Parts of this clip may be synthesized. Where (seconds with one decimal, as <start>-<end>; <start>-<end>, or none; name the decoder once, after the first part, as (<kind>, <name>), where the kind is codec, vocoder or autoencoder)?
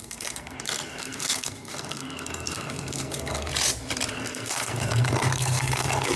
0.0-3.5 (codec, SNAC); 4.1-6.2